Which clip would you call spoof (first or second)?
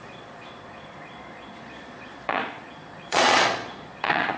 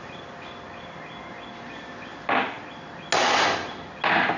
first